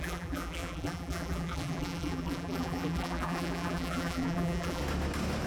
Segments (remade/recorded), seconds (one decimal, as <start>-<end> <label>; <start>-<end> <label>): 0.0-4.8 remade; 4.8-5.5 recorded